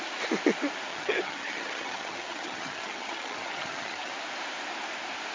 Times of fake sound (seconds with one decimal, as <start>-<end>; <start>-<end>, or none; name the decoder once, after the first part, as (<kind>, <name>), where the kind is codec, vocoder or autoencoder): 0.9-4.1 (vocoder, HiFi-GAN)